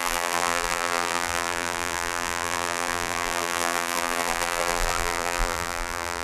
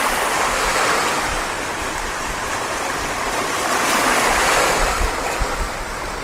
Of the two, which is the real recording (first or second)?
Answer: second